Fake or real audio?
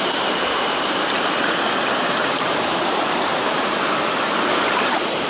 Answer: fake